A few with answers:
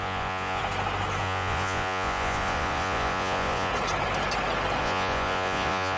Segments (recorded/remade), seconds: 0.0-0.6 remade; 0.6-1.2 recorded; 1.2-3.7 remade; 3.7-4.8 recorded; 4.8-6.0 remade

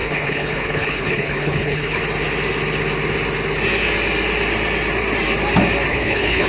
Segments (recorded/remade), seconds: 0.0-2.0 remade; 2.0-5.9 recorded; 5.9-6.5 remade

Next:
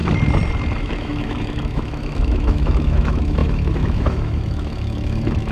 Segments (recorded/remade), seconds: 0.0-0.8 recorded; 0.8-5.5 remade